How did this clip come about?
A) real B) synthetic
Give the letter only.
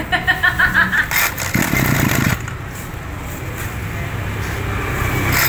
A